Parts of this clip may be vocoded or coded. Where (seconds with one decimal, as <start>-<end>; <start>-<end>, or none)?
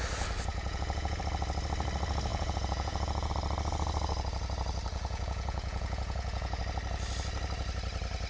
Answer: 0.5-1.2; 2.3-3.3; 4.9-6.6